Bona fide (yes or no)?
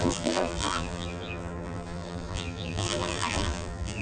no